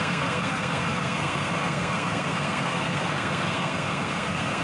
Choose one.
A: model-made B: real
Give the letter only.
A